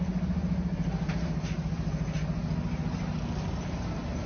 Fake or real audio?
real